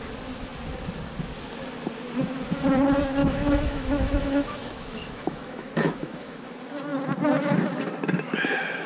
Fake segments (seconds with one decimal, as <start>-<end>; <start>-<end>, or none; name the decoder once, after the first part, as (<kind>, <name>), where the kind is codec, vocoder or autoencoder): 3.2-6.5 (autoencoder, DAC-VAE)